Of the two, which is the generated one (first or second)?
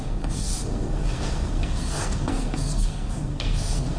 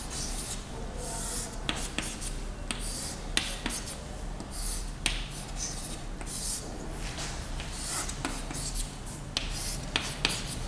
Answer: first